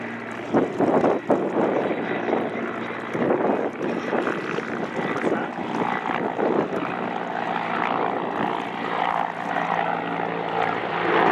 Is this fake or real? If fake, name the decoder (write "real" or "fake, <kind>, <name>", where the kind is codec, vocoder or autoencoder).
real